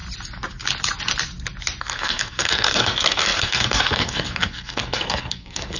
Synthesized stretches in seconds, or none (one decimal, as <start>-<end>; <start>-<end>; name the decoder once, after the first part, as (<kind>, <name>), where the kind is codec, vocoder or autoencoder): 1.8-5.8 (codec, SNAC)